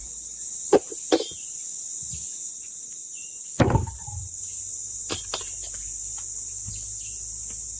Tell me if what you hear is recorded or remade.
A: recorded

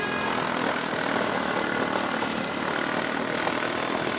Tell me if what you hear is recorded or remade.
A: recorded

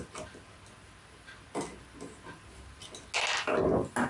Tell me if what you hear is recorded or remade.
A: recorded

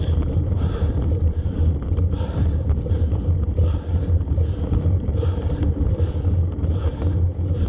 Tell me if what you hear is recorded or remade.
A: remade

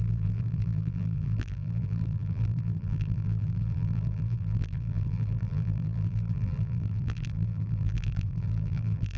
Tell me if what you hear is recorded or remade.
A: remade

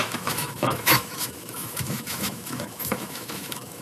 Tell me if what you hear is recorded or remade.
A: remade